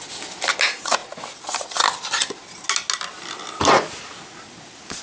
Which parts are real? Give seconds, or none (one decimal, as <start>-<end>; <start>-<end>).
0.0-5.0